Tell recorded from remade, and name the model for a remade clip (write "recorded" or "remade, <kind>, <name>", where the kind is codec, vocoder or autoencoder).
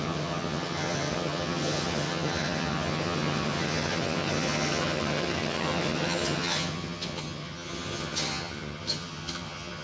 remade, vocoder, HiFi-GAN